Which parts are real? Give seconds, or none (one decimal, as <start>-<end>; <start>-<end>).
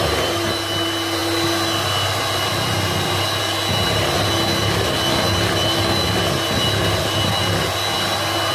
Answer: 0.0-8.5